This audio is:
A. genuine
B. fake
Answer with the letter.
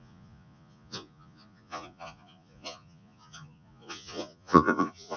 B